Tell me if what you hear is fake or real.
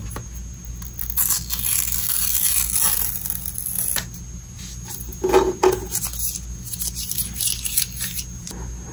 real